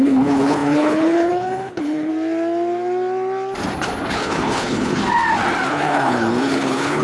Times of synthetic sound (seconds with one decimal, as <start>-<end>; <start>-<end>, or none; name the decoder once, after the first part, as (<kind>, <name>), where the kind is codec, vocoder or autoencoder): 0.0-2.1 (codec, HILCodec); 4.1-5.0; 5.7-7.0